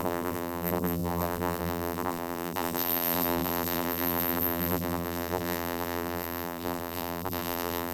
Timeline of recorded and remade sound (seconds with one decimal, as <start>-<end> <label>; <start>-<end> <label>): 0.0-7.9 remade